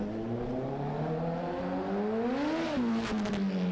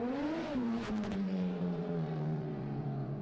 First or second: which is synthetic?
second